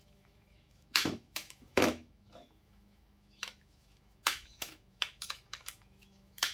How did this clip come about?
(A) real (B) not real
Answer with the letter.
B